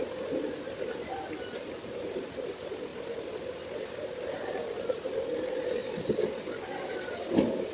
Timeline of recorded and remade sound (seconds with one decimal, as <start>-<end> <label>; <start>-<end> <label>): 0.0-7.7 recorded